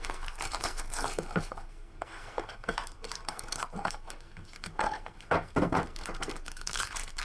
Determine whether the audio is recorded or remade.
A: remade